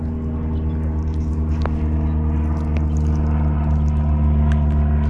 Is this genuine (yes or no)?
yes